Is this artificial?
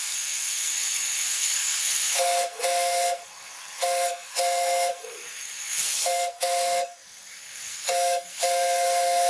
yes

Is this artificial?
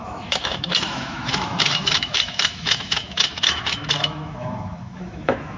yes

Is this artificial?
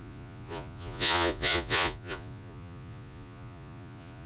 yes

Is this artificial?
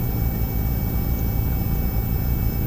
no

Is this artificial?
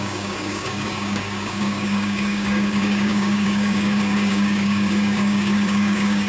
yes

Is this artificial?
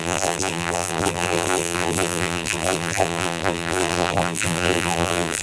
yes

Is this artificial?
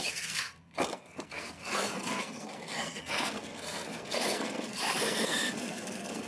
yes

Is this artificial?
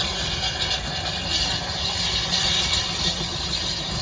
no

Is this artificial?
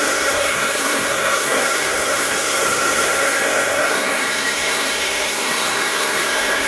yes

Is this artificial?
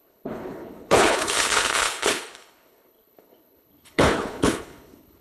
yes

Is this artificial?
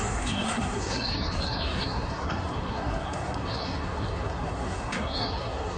yes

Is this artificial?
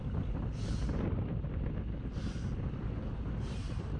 no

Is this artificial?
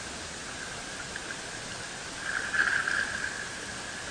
no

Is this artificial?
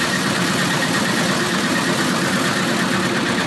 no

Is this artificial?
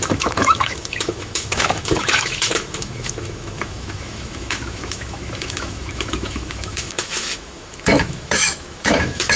yes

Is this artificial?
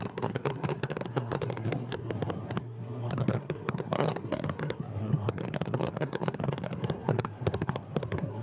yes